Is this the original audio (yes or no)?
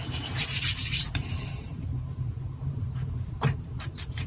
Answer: no